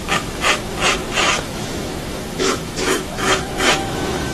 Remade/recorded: remade